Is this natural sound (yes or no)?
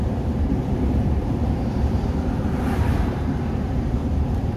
no